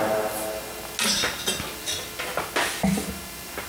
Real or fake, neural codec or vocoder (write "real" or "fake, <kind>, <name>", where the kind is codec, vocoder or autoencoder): real